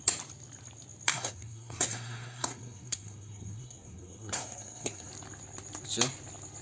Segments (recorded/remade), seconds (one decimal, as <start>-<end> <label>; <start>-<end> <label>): 0.0-1.1 recorded; 1.1-5.1 remade; 5.1-6.6 recorded